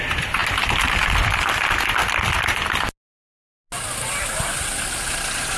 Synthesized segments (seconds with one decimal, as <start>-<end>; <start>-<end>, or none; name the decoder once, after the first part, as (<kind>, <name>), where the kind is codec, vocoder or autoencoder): none